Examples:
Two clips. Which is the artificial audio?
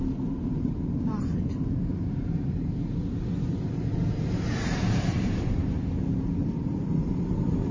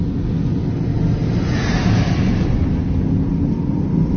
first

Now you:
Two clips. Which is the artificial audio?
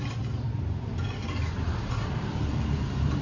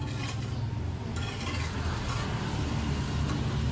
first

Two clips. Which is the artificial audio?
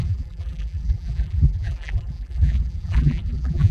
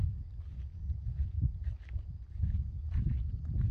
first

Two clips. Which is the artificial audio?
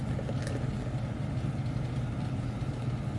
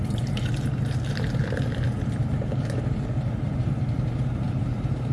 second